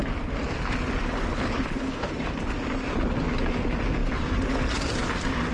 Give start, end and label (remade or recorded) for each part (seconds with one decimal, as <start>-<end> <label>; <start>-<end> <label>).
0.0-1.3 recorded; 1.3-2.1 remade; 2.1-5.5 recorded